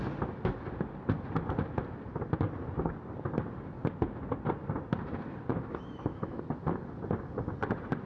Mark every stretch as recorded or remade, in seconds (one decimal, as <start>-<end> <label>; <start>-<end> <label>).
0.0-5.5 recorded; 5.5-6.4 remade; 6.4-8.1 recorded